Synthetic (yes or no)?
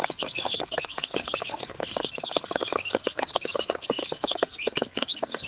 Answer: yes